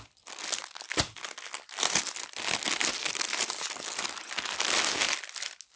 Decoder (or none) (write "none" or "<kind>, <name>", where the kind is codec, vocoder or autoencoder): none